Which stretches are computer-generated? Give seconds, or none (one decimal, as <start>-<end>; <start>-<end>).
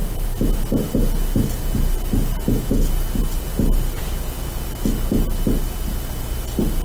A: none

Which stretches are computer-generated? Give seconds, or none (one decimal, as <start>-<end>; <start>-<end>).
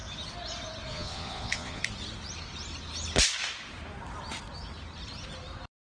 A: 0.9-1.8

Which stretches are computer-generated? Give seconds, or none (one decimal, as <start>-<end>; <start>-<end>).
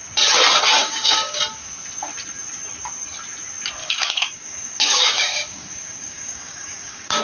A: 0.8-1.4; 3.8-7.2